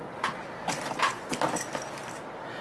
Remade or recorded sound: recorded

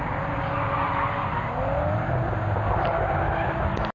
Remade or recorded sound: recorded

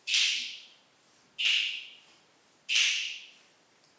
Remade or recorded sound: recorded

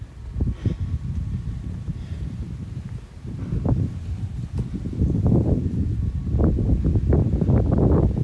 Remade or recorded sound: recorded